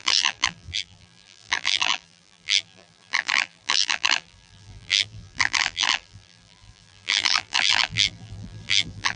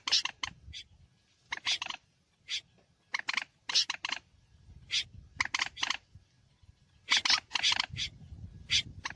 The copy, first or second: first